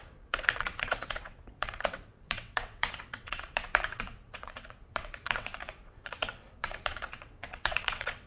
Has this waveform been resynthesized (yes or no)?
yes